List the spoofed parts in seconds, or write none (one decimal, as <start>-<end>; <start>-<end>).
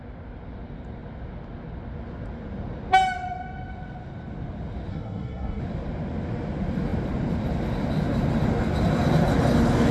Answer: 4.9-5.6